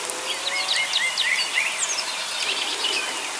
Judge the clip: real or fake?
real